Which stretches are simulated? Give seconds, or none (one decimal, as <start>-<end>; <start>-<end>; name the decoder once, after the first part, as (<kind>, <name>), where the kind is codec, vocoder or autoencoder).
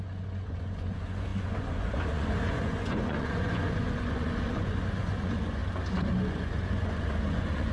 0.0-5.6 (vocoder, Vocos); 6.3-7.7